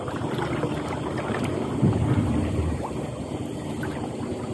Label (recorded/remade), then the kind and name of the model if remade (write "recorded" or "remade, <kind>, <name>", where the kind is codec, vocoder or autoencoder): recorded